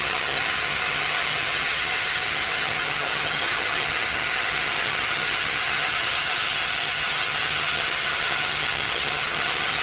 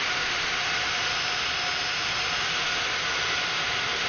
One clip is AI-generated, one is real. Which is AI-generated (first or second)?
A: first